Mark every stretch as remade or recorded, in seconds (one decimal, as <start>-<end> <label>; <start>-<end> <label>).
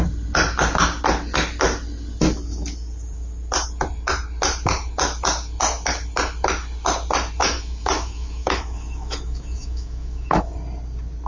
0.0-7.4 recorded; 7.4-10.4 remade; 10.4-11.3 recorded